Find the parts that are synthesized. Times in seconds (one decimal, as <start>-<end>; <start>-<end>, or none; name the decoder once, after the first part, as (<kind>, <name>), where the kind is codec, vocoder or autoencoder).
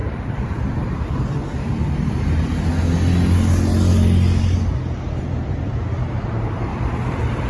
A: 0.0-1.2 (vocoder, BigVGAN v2); 6.7-7.5